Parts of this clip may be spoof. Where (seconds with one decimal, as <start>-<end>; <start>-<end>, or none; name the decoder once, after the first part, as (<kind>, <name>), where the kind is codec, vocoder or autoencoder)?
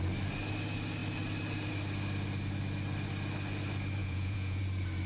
4.0-4.6 (vocoder, Vocos)